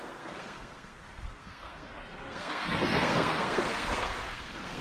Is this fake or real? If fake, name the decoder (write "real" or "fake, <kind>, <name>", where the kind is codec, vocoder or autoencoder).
fake, codec, SNAC